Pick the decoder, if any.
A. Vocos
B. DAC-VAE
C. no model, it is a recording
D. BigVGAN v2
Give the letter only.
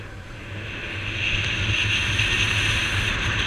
C